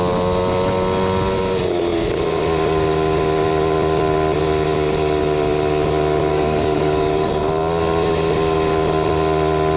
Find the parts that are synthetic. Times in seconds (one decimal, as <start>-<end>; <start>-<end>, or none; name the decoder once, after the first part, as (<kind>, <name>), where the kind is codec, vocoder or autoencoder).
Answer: 6.3-7.4 (codec, DAC)